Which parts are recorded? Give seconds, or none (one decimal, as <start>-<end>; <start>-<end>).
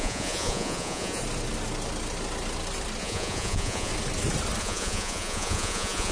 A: 1.2-3.0; 3.9-4.6